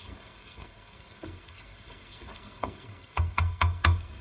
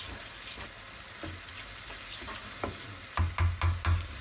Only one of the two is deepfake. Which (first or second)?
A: first